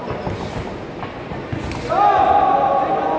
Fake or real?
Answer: real